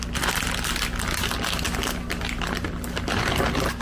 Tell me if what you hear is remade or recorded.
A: recorded